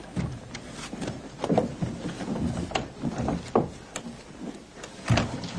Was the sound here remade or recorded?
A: recorded